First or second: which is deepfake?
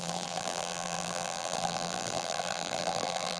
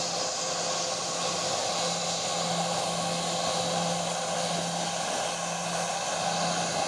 first